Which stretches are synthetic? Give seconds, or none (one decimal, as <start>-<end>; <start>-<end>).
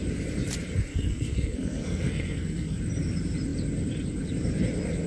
0.9-2.8